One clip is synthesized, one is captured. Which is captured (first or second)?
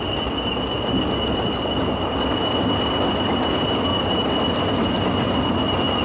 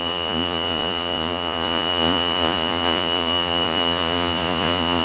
first